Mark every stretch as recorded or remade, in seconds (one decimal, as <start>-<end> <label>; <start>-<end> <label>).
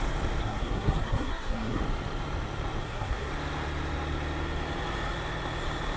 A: 0.0-0.4 recorded; 0.4-1.8 remade; 1.8-2.8 recorded; 2.8-3.3 remade; 3.3-6.0 recorded